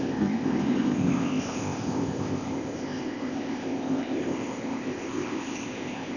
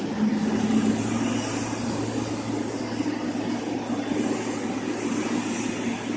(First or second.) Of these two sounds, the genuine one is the second